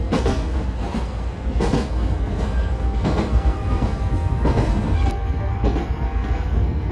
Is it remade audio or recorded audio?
remade